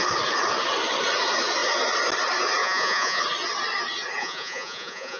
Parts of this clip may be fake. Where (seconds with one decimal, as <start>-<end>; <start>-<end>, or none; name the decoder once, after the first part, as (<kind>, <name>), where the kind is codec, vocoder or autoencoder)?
2.6-3.2 (vocoder, Vocos); 4.2-5.2